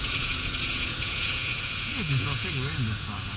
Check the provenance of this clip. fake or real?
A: fake